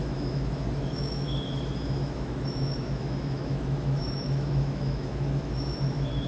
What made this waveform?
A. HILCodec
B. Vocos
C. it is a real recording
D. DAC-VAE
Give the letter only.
D